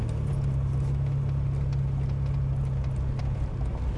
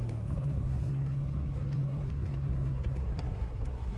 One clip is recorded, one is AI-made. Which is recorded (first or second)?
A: first